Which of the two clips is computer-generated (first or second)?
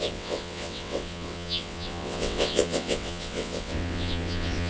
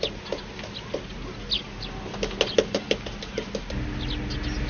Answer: first